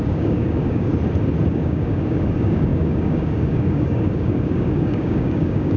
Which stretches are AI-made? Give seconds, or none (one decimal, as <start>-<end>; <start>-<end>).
0.0-0.9; 1.5-5.8

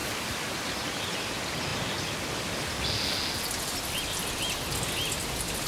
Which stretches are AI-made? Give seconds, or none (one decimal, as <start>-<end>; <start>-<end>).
0.0-0.6